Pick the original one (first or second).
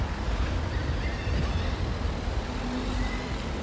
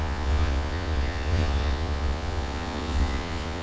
first